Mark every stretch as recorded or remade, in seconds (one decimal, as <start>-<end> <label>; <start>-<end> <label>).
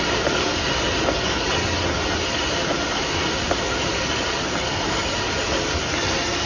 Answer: 0.0-0.5 remade; 0.5-2.9 recorded; 2.9-6.5 remade